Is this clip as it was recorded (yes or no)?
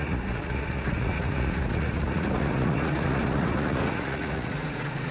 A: no